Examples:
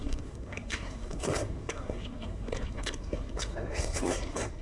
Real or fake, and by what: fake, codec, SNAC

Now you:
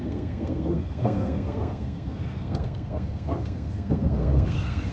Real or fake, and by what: fake, codec, SNAC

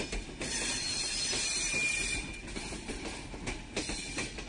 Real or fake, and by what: real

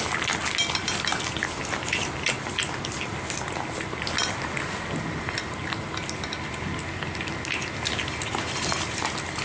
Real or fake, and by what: real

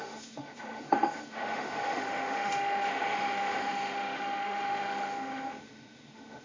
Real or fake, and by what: fake, autoencoder, DAC-VAE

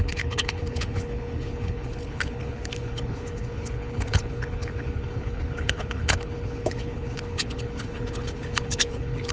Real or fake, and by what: fake, codec, HILCodec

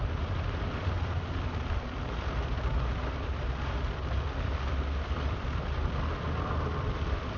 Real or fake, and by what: fake, vocoder, BigVGAN v2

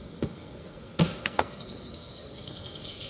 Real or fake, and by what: fake, codec, SNAC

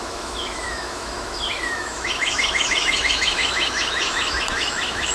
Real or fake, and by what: fake, autoencoder, DAC-VAE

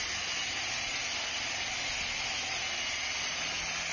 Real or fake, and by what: real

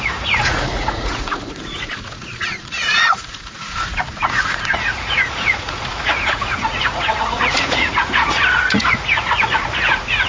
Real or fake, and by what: fake, vocoder, Vocos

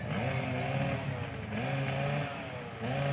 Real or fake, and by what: real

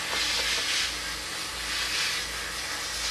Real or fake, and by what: real